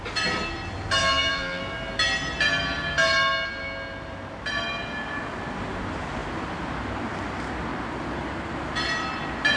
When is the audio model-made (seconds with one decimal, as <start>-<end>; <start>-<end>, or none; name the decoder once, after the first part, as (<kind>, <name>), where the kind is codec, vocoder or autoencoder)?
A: 1.0-1.6 (vocoder, BigVGAN v2)